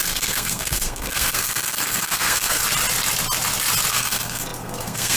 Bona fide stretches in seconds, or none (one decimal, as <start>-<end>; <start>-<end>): 2.6-3.9